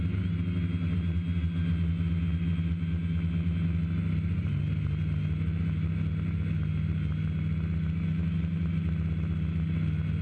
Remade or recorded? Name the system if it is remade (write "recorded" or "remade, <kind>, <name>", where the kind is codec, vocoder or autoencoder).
recorded